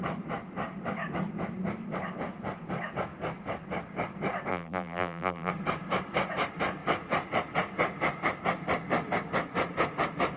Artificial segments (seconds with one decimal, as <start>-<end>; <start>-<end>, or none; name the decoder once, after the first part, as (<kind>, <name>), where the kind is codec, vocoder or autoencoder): 4.5-5.5 (vocoder, BigVGAN v2)